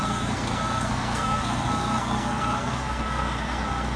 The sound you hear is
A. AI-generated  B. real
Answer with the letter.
A